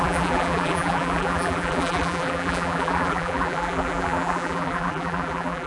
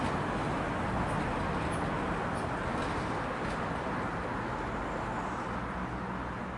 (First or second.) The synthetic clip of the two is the first